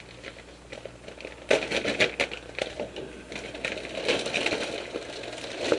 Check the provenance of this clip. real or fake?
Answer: real